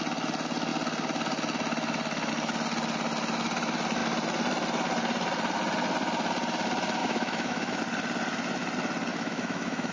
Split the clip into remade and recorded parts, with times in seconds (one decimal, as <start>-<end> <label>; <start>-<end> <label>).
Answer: 0.0-7.0 recorded; 7.0-7.8 remade; 7.8-9.1 recorded; 9.1-9.9 remade